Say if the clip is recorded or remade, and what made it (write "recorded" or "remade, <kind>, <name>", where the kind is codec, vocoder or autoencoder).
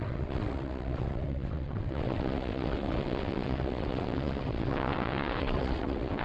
remade, vocoder, WaveNeXt